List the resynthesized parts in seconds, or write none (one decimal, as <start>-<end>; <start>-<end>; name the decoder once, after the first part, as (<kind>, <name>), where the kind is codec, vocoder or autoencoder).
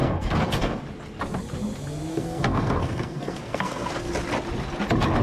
0.0-0.8 (codec, SNAC); 2.1-3.9